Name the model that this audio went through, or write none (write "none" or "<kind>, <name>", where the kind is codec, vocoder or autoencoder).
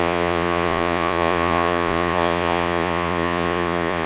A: vocoder, Vocos